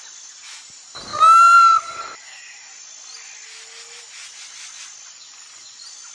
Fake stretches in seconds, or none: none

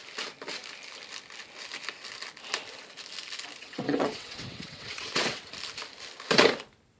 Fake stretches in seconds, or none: 3.6-5.5

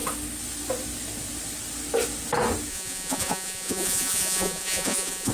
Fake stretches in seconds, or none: 2.7-5.3